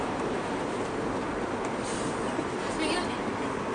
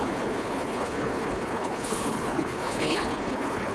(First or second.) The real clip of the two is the first